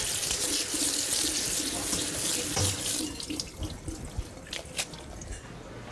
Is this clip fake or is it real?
real